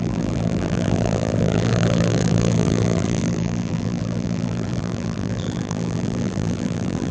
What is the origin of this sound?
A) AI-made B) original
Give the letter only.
A